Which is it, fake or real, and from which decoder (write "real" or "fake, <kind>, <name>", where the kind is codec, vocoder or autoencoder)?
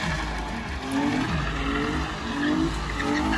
real